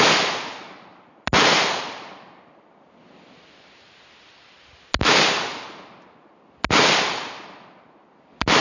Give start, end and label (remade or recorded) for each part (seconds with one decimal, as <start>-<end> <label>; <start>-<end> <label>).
0.0-8.6 recorded